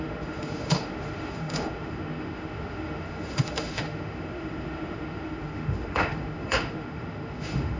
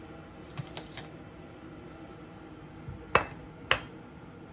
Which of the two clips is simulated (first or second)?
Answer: first